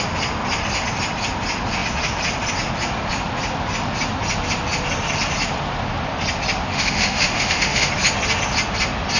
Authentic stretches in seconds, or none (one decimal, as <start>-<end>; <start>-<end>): 0.0-6.7; 7.9-9.2